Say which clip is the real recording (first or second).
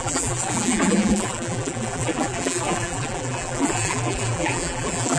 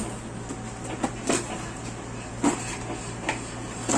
second